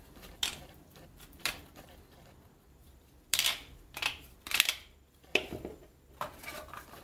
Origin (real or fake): fake